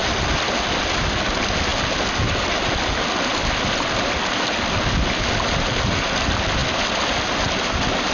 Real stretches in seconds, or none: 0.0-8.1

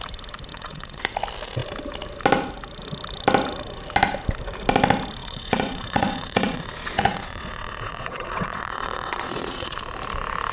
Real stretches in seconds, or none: 0.0-0.5; 1.0-5.2; 9.8-10.5